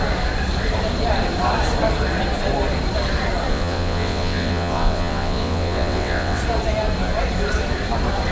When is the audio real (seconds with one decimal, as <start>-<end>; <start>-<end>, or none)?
0.0-3.5; 6.4-8.3